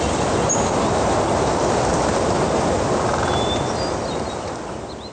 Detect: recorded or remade recorded